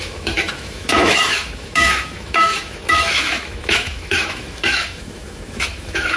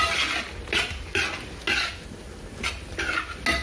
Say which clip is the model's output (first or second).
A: first